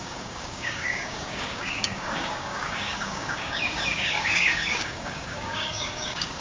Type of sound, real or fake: fake